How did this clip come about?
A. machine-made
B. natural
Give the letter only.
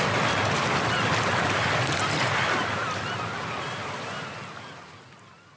B